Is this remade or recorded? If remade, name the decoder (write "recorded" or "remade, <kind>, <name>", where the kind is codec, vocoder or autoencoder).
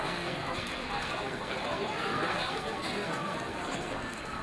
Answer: remade, codec, SNAC